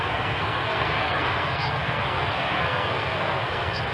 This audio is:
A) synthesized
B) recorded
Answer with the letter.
A